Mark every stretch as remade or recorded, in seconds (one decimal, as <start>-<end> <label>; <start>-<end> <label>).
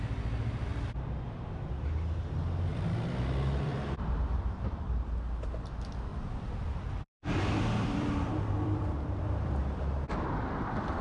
0.0-2.7 recorded; 2.7-4.9 remade; 4.9-6.1 recorded; 6.1-11.0 remade